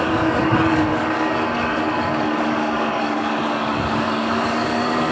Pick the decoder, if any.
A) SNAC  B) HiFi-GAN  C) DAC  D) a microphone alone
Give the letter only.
C